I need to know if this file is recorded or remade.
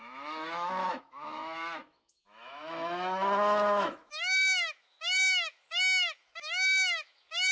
remade